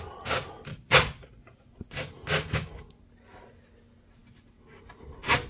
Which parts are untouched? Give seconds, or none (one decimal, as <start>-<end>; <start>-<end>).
0.0-0.7; 1.9-5.5